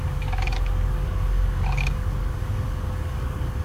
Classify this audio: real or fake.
fake